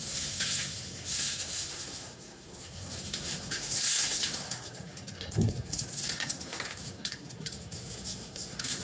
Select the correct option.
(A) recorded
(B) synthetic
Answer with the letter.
B